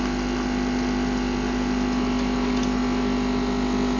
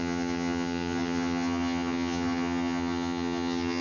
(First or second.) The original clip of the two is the first